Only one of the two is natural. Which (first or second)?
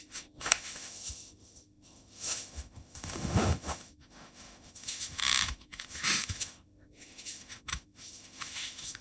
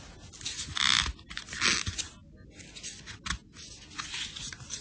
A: second